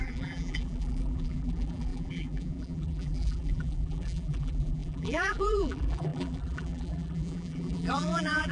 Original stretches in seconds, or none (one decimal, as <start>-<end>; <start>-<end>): none